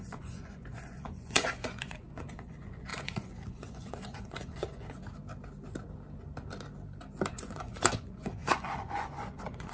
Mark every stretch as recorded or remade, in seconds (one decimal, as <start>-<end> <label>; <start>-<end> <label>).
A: 0.0-5.0 remade; 5.0-7.3 recorded; 7.3-9.7 remade